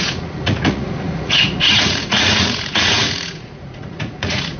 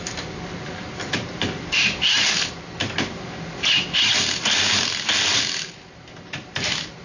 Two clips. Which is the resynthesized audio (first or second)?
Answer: first